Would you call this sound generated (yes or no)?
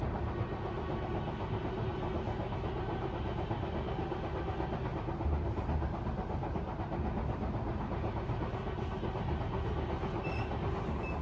no